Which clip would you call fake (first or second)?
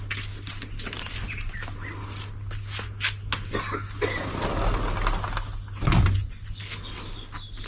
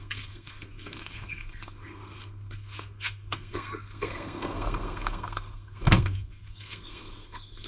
second